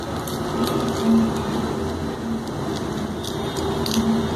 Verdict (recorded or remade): recorded